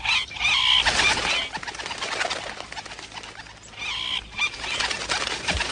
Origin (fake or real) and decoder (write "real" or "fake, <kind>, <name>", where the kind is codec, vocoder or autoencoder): real